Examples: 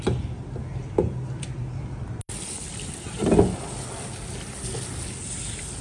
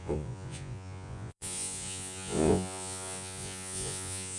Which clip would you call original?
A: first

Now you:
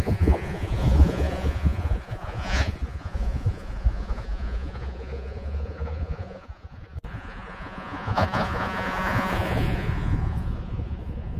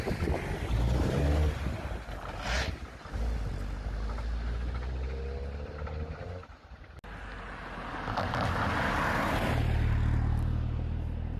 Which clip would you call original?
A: second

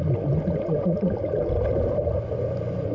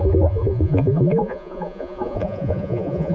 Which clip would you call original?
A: first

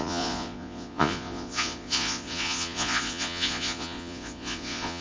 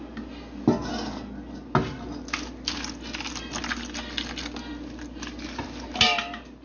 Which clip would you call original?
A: second